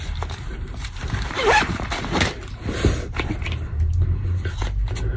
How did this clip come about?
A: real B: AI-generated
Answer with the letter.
B